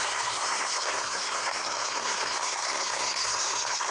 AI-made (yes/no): yes